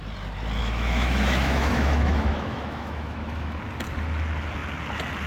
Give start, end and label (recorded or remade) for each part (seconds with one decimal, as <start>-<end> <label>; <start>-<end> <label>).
0.0-0.6 recorded; 0.6-3.6 remade; 3.6-5.3 recorded